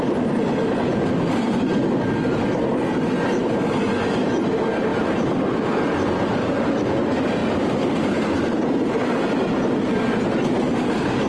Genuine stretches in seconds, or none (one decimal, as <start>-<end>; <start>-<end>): 0.0-11.3